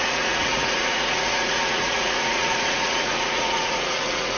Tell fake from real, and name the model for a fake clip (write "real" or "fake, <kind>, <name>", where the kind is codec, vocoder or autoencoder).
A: fake, vocoder, Vocos